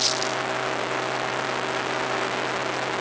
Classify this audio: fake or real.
real